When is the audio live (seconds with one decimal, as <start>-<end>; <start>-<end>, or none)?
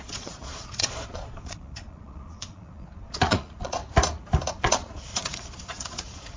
3.8-4.5